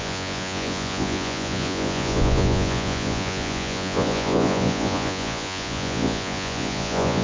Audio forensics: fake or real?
fake